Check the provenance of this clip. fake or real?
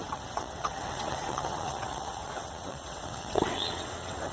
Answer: fake